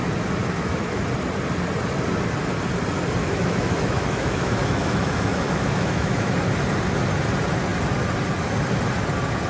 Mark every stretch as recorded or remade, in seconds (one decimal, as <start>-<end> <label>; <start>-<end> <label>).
0.0-0.4 recorded; 0.4-1.0 remade; 1.0-3.2 recorded; 3.2-6.3 remade; 6.3-9.5 recorded